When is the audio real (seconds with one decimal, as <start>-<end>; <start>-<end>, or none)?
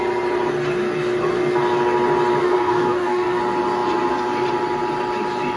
0.0-2.4; 3.4-5.6